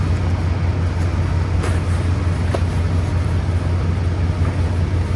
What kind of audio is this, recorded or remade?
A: recorded